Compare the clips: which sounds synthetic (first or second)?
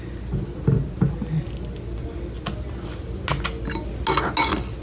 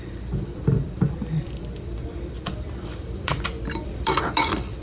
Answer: second